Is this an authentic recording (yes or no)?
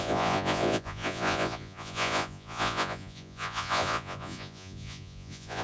no